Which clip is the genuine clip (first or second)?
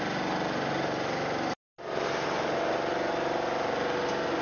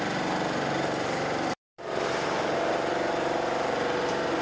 first